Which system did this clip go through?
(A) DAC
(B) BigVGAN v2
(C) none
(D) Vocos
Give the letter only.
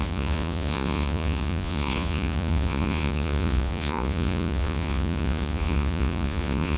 D